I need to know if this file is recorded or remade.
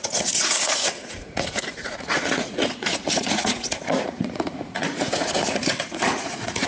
remade